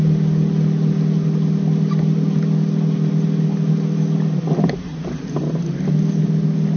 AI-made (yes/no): no